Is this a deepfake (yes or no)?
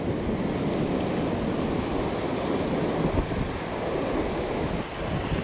no